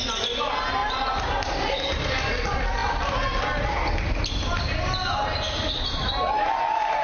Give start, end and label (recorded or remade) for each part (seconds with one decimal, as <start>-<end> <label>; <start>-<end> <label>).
0.0-7.0 recorded